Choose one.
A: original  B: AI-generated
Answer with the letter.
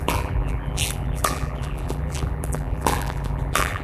B